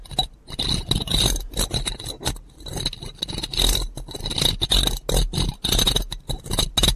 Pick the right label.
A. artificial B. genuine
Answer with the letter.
B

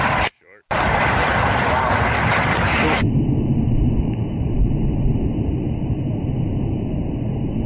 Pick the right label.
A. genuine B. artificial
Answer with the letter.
A